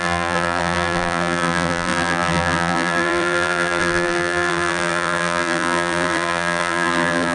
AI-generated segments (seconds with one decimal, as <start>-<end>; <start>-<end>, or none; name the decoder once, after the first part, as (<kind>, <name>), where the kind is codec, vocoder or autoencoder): 0.0-7.3 (vocoder, BigVGAN v2)

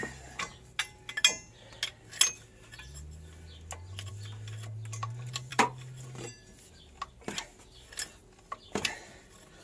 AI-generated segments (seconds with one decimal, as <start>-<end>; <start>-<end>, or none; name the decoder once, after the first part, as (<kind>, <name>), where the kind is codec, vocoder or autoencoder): 5.5-6.9 (vocoder, BigVGAN v2)

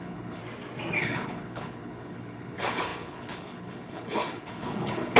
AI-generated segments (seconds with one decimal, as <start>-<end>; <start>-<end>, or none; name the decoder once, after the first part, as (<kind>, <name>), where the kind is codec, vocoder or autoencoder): 0.0-0.4 (codec, HILCodec); 1.0-5.2